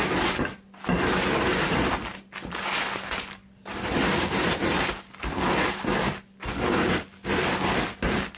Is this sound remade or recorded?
recorded